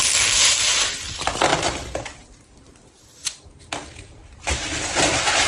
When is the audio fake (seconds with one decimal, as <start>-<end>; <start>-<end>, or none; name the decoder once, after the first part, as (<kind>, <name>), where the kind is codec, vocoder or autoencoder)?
none